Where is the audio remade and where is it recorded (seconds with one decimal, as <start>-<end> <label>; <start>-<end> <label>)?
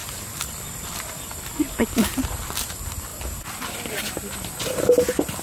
0.0-2.1 recorded; 2.1-2.7 remade; 2.7-5.4 recorded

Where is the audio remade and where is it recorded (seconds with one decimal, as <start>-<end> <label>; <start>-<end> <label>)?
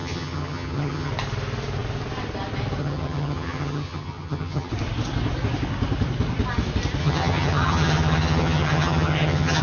0.0-1.1 remade; 1.1-2.8 recorded; 2.8-4.7 remade; 4.7-7.0 recorded; 7.0-9.6 remade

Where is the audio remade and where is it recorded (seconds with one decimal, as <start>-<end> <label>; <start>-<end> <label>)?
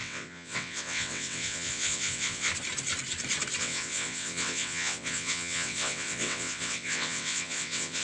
0.0-2.5 remade; 2.5-3.6 recorded; 3.6-8.0 remade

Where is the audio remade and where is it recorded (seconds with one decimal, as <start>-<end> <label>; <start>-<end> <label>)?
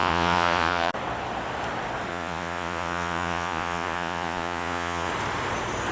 0.0-0.9 remade; 0.9-2.1 recorded; 2.1-5.1 remade; 5.1-5.9 recorded